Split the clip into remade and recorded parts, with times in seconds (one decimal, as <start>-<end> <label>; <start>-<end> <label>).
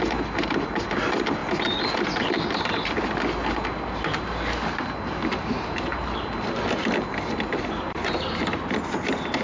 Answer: 0.0-9.4 recorded